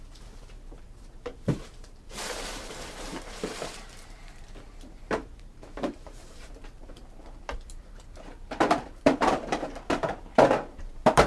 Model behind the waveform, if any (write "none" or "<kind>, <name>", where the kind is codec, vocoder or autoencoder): vocoder, BigVGAN v2